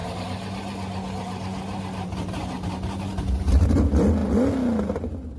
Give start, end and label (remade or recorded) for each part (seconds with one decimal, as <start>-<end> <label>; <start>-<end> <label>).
0.0-5.4 recorded